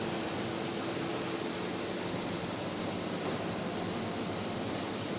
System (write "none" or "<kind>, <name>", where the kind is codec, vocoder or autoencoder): none